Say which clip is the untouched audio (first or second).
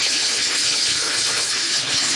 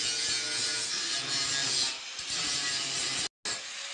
second